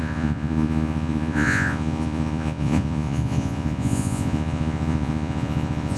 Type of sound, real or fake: fake